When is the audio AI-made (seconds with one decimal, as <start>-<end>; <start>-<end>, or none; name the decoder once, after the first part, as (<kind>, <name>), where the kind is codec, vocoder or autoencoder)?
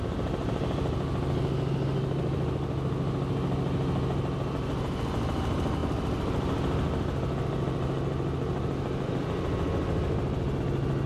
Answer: none